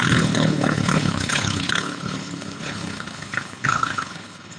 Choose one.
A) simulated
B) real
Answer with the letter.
A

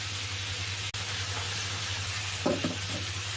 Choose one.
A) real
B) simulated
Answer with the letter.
A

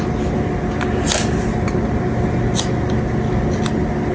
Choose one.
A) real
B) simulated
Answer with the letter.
A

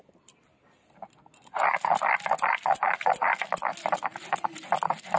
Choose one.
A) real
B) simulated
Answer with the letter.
A